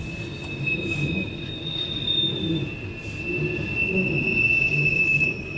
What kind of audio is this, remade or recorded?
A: recorded